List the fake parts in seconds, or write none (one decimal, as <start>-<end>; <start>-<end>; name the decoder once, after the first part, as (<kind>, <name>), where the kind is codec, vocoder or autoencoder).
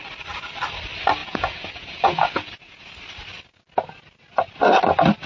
1.2-2.9 (vocoder, Vocos)